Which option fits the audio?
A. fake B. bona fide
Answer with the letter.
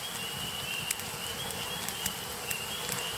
B